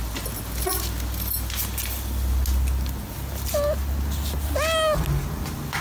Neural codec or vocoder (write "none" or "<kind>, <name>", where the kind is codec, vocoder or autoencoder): none